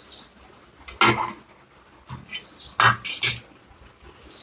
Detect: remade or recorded recorded